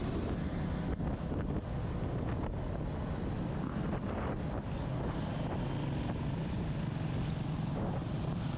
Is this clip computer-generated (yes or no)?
no